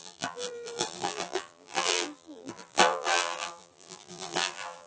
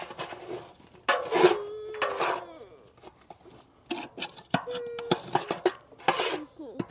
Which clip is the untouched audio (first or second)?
second